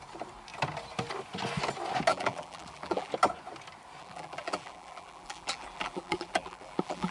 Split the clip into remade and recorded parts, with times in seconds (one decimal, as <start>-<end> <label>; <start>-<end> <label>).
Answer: 0.0-2.1 recorded; 2.1-3.1 remade; 3.1-4.0 recorded; 4.0-7.1 remade